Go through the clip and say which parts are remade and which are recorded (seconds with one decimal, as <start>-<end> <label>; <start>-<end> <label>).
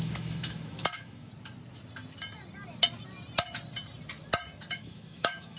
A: 0.0-1.3 remade; 1.3-4.7 recorded; 4.7-5.6 remade